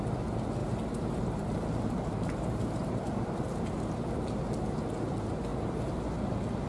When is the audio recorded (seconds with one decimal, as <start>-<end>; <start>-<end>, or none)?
0.0-0.6; 4.4-5.5